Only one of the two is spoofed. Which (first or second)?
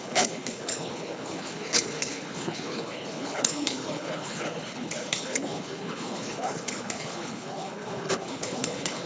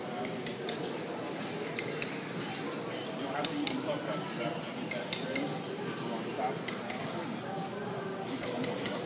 first